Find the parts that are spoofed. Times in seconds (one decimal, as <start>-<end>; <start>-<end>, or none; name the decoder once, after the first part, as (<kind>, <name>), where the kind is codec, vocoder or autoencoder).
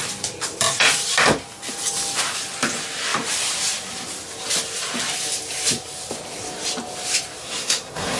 7.4-8.2 (codec, SNAC)